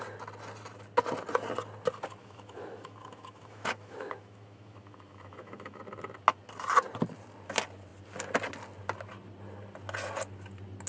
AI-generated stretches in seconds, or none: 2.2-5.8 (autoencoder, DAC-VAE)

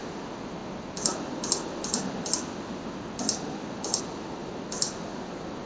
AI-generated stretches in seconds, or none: none

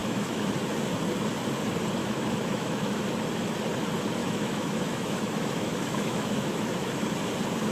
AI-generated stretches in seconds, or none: 0.0-0.5 (autoencoder, DAC-VAE); 2.0-3.0; 4.2-7.0

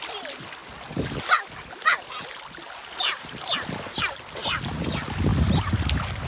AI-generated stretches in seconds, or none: none

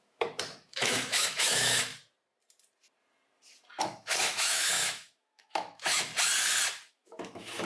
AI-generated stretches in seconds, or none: 0.0-1.9 (autoencoder, DAC-VAE); 3.8-6.1; 6.9-7.6

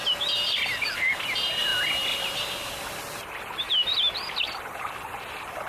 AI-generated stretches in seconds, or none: none

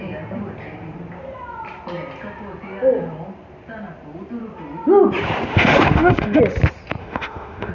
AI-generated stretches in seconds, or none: 5.5-6.4 (autoencoder, DAC-VAE); 7.0-7.7

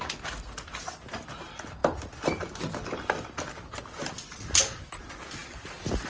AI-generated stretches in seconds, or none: none